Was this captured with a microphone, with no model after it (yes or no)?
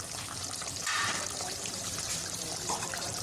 no